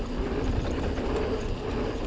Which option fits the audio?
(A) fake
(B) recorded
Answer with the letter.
B